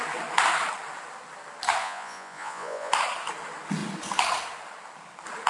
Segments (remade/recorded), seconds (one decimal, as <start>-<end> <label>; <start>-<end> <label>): 0.0-1.8 recorded; 1.8-2.9 remade; 2.9-5.5 recorded